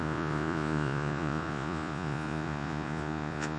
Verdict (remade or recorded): remade